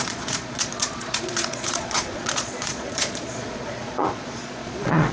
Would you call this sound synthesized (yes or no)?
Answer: yes